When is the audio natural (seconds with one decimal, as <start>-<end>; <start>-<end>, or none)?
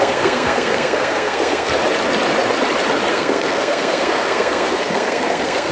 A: 1.7-3.1